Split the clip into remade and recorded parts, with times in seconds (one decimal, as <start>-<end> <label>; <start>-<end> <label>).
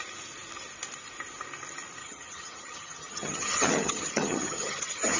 0.0-2.0 recorded; 2.0-5.2 remade